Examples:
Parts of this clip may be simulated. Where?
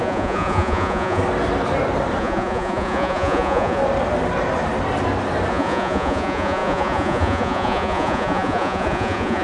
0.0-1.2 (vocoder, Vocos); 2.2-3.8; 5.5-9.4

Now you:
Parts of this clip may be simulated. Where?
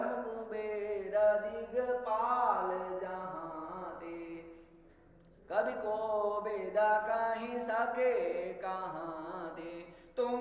8.3-10.0 (vocoder, Vocos)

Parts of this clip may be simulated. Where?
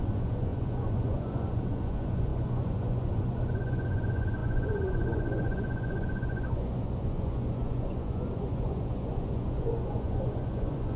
0.0-11.0 (vocoder, Vocos)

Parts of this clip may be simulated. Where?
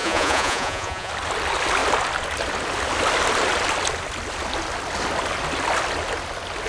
0.0-1.1 (vocoder, Vocos)